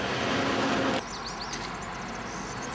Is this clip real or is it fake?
real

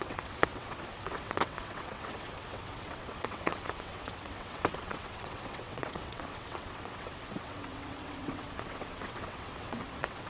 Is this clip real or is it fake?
fake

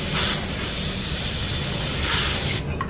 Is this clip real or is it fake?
real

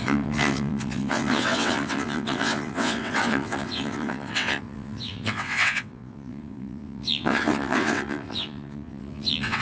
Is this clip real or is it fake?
fake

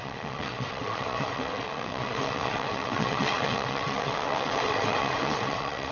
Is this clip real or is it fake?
fake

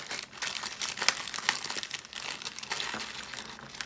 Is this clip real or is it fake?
real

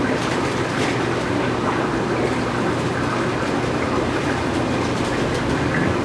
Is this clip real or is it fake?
real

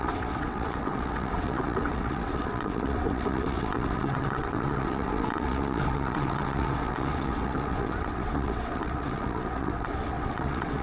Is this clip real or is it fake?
fake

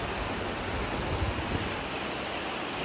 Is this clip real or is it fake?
real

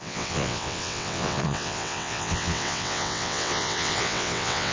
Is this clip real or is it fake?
fake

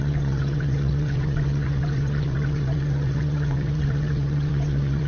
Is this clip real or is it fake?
fake